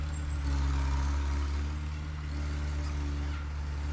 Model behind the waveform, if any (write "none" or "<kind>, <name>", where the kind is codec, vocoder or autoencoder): none